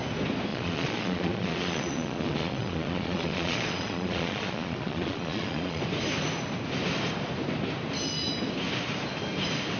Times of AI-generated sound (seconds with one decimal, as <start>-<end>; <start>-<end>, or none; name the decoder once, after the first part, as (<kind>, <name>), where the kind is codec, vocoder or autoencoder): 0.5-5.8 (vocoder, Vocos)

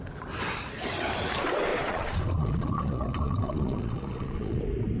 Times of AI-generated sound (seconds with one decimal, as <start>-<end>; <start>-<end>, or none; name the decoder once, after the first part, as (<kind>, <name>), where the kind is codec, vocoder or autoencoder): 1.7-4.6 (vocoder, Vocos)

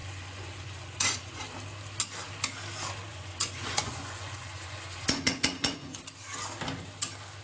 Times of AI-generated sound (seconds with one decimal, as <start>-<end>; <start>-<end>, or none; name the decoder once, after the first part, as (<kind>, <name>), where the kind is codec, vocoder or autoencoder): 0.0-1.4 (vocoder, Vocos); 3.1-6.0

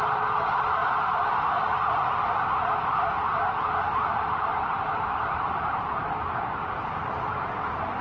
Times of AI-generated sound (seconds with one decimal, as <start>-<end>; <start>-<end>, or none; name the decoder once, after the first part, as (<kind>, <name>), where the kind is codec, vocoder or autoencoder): none